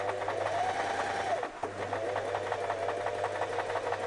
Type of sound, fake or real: real